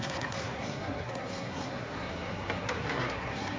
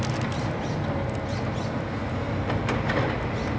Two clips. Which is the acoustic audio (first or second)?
second